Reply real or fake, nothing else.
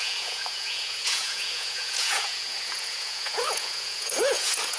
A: fake